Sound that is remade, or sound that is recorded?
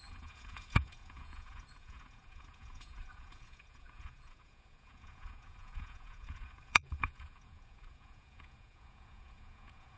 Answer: remade